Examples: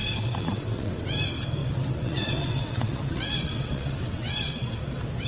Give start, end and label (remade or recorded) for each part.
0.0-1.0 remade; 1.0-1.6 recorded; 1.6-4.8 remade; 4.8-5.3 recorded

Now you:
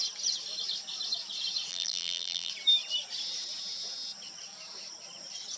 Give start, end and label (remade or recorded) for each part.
0.0-1.7 recorded; 1.7-2.5 remade; 2.5-5.6 recorded

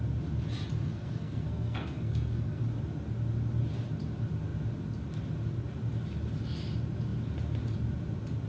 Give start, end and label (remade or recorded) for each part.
0.0-0.8 recorded; 0.8-2.6 remade; 2.6-8.5 recorded

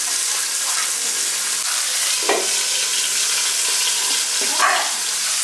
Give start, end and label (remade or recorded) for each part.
0.0-5.4 recorded

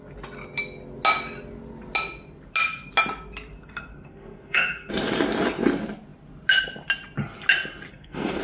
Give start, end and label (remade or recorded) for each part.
0.0-3.9 recorded; 3.9-4.9 remade; 4.9-7.9 recorded; 7.9-8.4 remade